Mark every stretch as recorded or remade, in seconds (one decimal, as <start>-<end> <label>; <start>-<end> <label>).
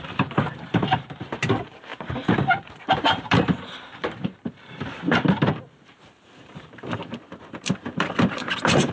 0.0-1.9 remade; 1.9-2.5 recorded; 2.5-8.9 remade